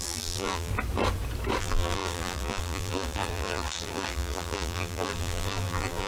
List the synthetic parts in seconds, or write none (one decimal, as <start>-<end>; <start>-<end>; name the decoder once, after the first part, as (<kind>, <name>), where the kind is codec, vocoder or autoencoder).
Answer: 0.0-0.7 (vocoder, BigVGAN v2); 1.6-6.1